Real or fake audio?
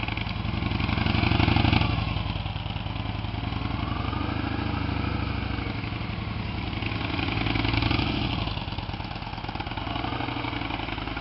real